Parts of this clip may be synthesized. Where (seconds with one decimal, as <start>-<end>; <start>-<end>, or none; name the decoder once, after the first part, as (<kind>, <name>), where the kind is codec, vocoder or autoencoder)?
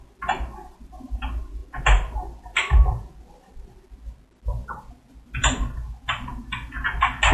none